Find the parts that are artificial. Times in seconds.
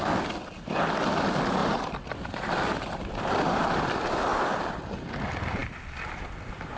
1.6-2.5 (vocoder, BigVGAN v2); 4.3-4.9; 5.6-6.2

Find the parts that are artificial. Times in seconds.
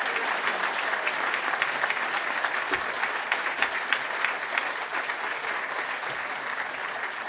none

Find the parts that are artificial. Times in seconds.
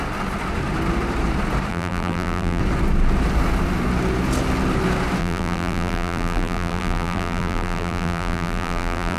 1.7-2.6 (vocoder, BigVGAN v2); 5.2-9.2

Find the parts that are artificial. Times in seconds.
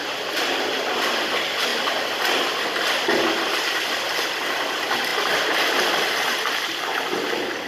none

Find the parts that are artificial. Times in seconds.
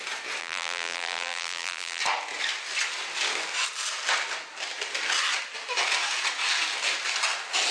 0.4-2.0 (vocoder, BigVGAN v2)